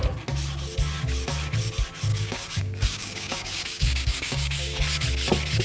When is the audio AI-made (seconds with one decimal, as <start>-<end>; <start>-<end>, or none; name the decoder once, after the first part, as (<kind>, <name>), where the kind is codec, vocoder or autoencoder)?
2.1-4.8 (codec, DAC)